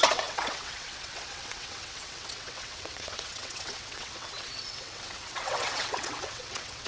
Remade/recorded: remade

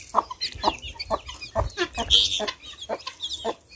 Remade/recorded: recorded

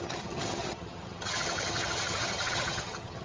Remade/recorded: remade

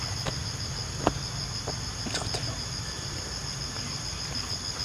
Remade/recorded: recorded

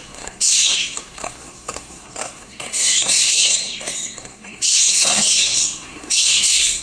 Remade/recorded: remade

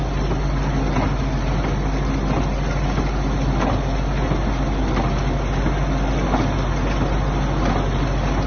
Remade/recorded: recorded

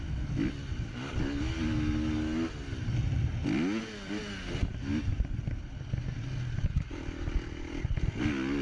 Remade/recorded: recorded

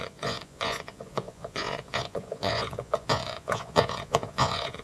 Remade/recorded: remade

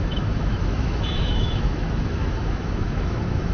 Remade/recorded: remade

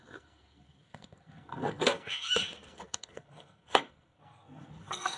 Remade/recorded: remade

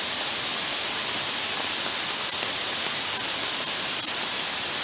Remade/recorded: recorded